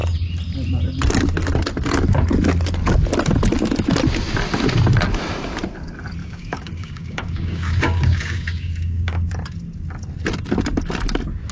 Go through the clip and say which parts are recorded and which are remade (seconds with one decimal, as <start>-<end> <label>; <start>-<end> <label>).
0.0-6.2 recorded; 6.2-9.3 remade; 9.3-11.5 recorded